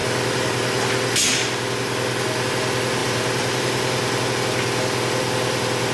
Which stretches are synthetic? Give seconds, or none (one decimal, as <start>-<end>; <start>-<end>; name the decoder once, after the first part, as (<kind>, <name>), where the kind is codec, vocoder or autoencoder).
3.0-4.3 (vocoder, BigVGAN v2)